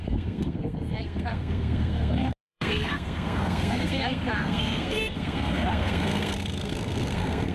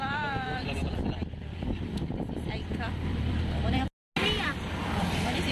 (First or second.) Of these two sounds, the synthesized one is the first